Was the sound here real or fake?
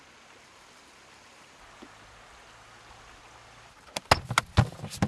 real